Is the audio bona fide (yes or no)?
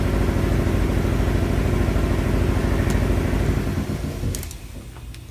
yes